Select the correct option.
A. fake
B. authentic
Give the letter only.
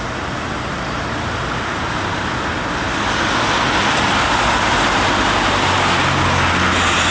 B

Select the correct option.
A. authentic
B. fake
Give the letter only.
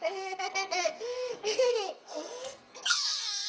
B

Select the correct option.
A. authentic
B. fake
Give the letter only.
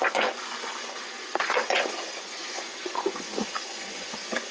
B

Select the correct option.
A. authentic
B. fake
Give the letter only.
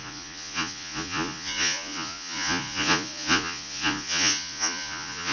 B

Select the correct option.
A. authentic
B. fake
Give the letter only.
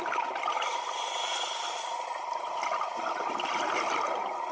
A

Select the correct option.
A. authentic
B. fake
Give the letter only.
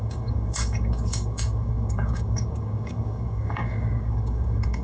B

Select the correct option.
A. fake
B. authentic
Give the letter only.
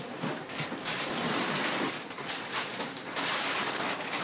A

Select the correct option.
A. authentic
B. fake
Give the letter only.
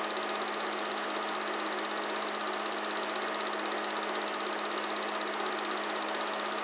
A